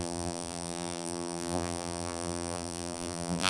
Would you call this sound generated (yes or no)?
yes